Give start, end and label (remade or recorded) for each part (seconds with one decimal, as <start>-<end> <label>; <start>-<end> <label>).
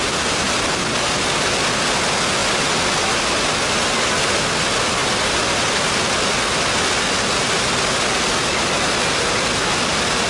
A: 0.0-10.3 recorded